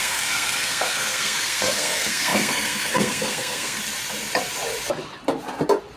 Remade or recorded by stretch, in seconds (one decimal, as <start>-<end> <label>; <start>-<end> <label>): 0.0-3.8 remade; 3.8-6.0 recorded